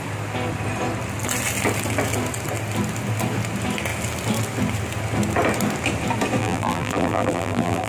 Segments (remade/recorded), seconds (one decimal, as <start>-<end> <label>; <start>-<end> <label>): 0.0-6.4 recorded; 6.4-7.9 remade